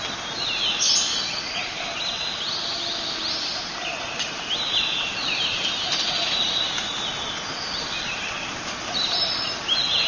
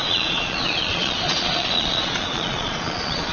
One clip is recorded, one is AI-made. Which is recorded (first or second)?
first